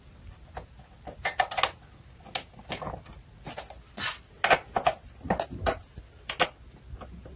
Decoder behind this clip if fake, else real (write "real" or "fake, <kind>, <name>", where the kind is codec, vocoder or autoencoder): real